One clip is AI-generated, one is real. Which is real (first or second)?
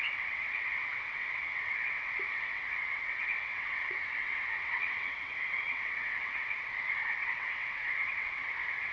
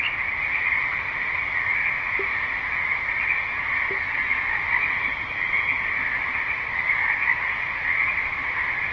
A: second